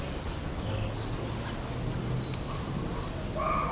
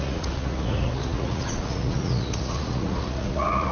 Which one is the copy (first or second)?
second